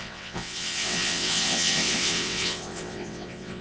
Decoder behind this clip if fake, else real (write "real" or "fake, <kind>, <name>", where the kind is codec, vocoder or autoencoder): fake, vocoder, WaveNeXt